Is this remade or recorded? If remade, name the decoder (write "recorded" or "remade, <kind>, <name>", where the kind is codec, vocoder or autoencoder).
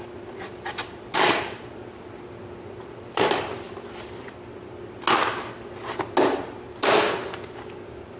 recorded